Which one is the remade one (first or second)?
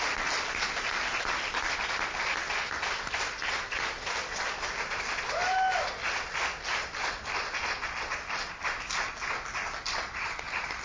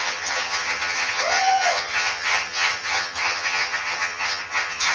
second